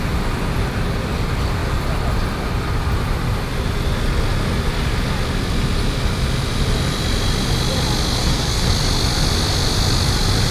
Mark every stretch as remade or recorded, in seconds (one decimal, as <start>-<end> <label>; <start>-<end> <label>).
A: 0.0-8.2 recorded; 8.2-8.7 remade; 8.7-10.5 recorded